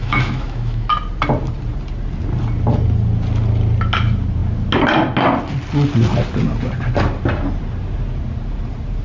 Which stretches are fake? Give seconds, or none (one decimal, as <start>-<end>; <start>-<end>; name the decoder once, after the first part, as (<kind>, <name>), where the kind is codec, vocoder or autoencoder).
0.0-0.9 (autoencoder, DAC-VAE)